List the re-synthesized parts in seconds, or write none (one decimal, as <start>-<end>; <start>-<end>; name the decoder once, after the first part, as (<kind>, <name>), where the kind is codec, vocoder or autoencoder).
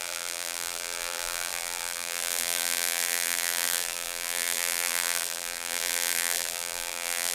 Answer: 0.0-7.3 (vocoder, BigVGAN v2)